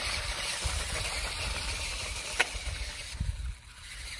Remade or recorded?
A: recorded